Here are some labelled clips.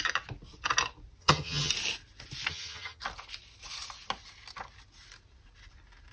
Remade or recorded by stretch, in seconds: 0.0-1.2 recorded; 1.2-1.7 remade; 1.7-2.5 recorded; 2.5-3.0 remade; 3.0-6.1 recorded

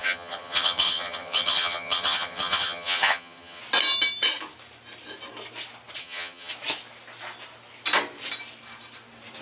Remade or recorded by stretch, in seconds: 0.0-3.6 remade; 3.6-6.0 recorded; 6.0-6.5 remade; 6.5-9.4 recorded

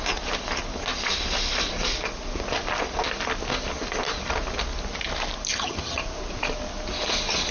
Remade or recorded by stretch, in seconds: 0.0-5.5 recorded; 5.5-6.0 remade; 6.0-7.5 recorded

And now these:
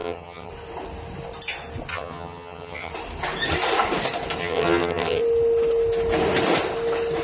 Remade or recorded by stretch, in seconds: 0.0-0.5 remade; 0.5-1.9 recorded; 1.9-2.9 remade; 2.9-4.4 recorded; 4.4-5.2 remade; 5.2-7.2 recorded

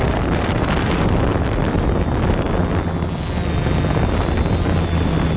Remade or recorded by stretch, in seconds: 0.0-5.4 recorded

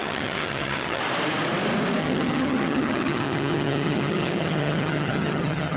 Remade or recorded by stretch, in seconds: 0.0-1.0 remade; 1.0-2.0 recorded; 2.0-5.8 remade

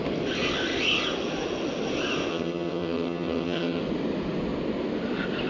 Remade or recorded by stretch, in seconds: 0.0-2.3 recorded; 2.3-3.8 remade; 3.8-5.5 recorded